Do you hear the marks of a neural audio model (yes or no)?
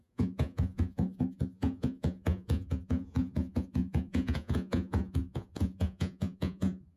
yes